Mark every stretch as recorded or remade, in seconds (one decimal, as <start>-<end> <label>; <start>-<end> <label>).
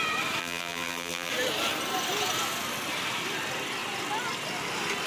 0.0-0.4 recorded; 0.4-1.3 remade; 1.3-5.1 recorded